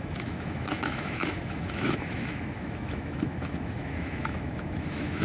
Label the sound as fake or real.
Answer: fake